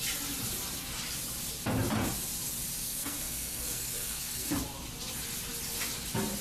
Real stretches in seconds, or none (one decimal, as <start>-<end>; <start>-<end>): 0.0-2.8; 4.5-6.4

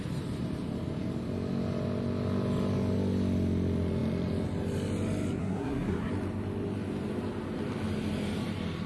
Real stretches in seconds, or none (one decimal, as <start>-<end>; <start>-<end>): 0.0-5.4; 6.1-8.9

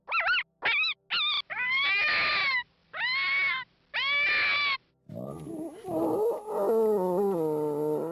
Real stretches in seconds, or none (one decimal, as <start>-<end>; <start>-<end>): 0.0-8.1

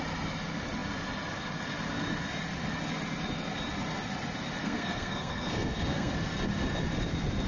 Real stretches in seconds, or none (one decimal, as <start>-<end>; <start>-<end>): 0.0-4.6; 6.1-7.5

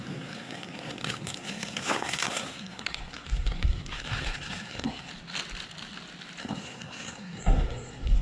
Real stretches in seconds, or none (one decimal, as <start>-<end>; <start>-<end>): 5.1-6.4

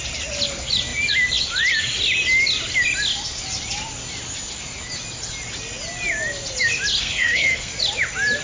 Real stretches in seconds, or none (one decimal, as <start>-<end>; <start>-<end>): 0.0-7.0; 7.7-8.4

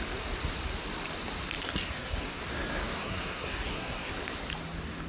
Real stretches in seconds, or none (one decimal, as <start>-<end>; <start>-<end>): 0.0-1.8; 2.4-3.0; 4.1-5.1

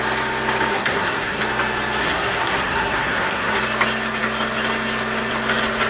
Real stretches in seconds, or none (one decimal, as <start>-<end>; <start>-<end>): 0.0-0.7; 1.4-2.0; 3.6-5.9